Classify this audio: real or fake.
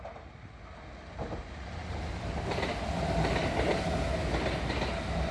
real